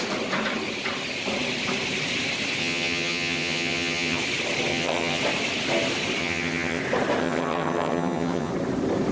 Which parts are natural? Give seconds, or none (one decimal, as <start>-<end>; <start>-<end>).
0.0-2.6; 4.2-4.7; 5.2-6.2; 6.8-7.2; 8.5-9.1